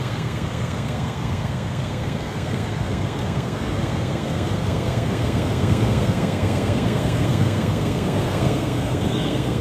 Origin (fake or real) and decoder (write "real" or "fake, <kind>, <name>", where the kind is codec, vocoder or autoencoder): fake, codec, SNAC